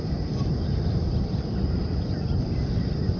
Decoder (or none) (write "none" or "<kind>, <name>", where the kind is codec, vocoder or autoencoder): none